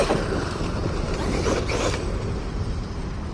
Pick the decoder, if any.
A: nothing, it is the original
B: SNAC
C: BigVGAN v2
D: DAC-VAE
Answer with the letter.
A